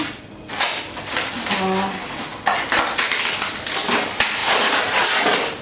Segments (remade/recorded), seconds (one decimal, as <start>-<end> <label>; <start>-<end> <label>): 0.0-5.6 recorded